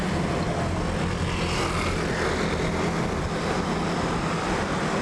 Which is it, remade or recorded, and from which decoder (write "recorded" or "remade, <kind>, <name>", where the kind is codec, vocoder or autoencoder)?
recorded